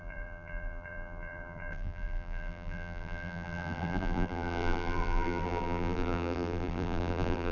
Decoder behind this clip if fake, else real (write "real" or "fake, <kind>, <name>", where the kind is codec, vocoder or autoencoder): fake, vocoder, BigVGAN v2